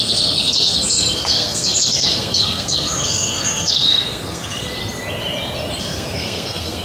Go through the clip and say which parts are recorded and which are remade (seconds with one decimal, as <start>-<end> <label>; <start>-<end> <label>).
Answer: 0.0-4.8 remade; 4.8-5.8 recorded; 5.8-6.8 remade